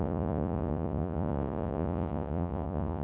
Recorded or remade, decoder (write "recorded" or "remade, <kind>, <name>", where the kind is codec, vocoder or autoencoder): remade, vocoder, Vocos